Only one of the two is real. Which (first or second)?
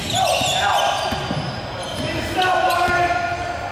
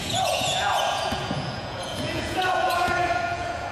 first